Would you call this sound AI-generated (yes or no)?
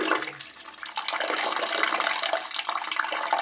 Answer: no